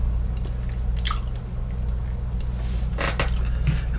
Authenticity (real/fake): real